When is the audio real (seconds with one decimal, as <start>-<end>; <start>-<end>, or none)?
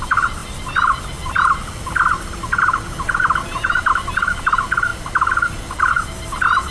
0.0-6.7